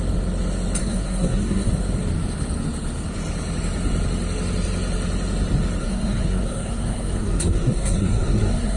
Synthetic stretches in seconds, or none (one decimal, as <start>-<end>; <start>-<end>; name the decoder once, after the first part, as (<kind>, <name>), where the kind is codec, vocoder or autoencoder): 0.8-1.7 (codec, SNAC); 5.8-8.8